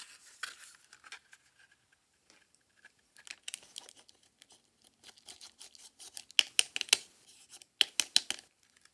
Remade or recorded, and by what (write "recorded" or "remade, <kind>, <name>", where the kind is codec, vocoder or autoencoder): recorded